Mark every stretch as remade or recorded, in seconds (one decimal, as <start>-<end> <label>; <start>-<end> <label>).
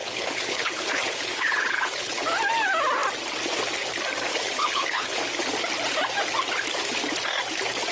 0.0-2.2 remade; 2.2-4.3 recorded; 4.3-5.2 remade; 5.2-7.9 recorded